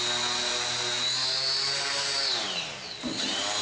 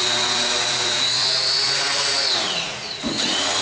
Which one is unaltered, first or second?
first